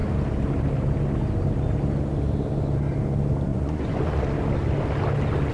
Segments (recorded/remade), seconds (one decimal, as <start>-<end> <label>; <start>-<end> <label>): 0.0-3.5 recorded; 3.5-4.2 remade; 4.2-5.5 recorded